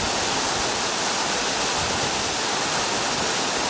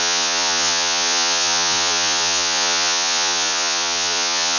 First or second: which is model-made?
second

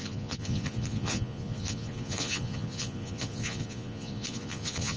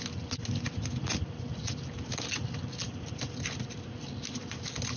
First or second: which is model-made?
first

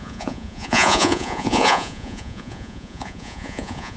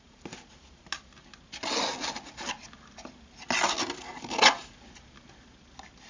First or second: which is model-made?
first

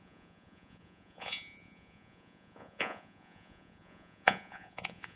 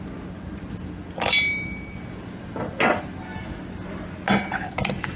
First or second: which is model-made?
first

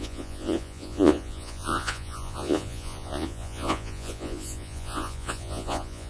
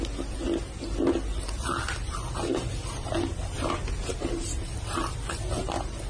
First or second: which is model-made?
first